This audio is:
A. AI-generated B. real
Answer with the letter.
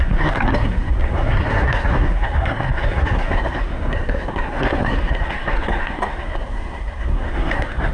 A